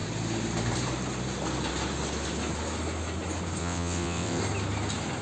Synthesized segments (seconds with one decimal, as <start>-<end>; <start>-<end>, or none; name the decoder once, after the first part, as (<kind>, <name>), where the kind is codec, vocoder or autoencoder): 3.6-4.4 (vocoder, WaveNeXt)